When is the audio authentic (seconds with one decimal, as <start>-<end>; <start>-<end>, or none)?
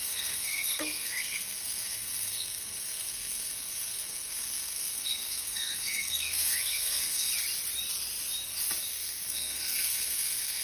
7.3-8.8